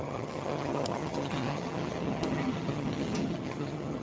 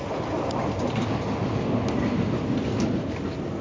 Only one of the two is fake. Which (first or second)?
first